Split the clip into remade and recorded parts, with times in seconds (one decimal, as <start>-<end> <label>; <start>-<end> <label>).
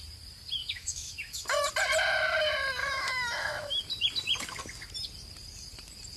0.0-0.6 recorded; 0.6-1.7 remade; 1.7-2.8 recorded; 2.8-3.8 remade; 3.8-6.2 recorded